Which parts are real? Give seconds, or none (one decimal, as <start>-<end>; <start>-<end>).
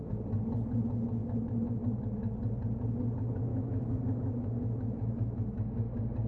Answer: 0.0-1.2; 1.8-3.5